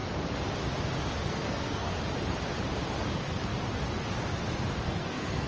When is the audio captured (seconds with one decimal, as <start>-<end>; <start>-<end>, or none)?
0.0-1.2; 1.9-3.1; 3.5-4.8